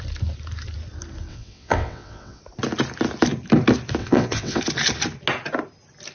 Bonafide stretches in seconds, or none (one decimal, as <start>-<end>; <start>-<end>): 0.0-1.3; 2.4-4.0; 4.6-6.1